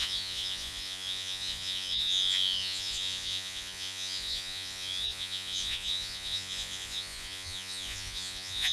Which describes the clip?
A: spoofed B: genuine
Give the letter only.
A